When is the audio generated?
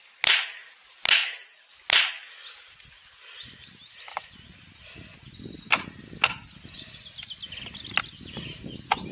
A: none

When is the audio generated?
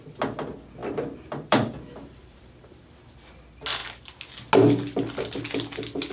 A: 0.8-3.1 (vocoder, BigVGAN v2)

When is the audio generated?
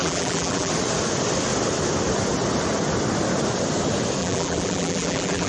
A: 0.0-0.7 (vocoder, BigVGAN v2); 4.2-5.5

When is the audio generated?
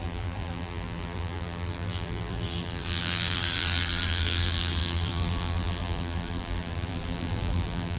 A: 0.0-8.0 (vocoder, BigVGAN v2)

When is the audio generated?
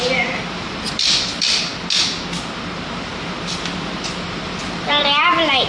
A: 0.0-1.7 (vocoder, BigVGAN v2); 3.9-5.7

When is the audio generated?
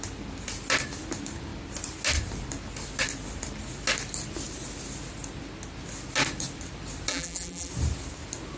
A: 7.1-7.7 (vocoder, BigVGAN v2)